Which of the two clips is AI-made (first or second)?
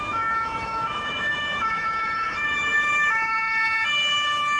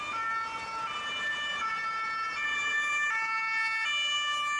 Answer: first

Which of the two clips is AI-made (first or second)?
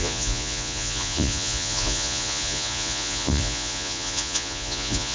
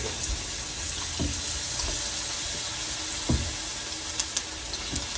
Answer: first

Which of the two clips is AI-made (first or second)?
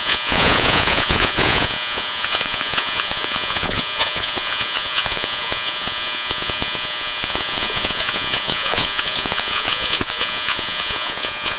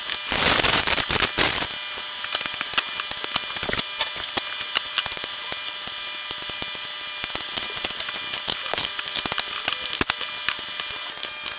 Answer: first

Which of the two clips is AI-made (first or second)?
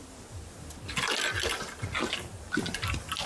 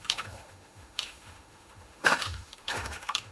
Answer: second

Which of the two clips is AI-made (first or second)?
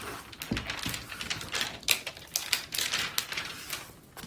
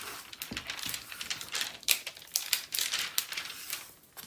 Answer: second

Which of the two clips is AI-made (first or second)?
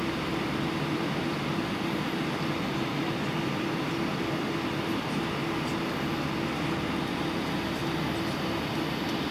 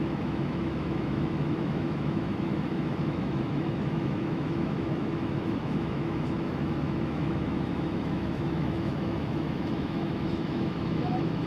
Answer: second